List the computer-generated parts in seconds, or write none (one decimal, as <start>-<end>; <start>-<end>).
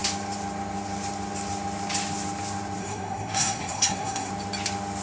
2.8-4.3